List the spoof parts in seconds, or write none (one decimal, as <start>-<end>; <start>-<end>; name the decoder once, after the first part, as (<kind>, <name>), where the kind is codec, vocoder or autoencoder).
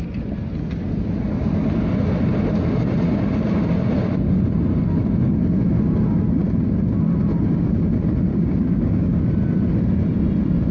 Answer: 8.3-9.2 (codec, DAC)